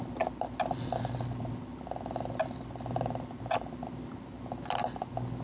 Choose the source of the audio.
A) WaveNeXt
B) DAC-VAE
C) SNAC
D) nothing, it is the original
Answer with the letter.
D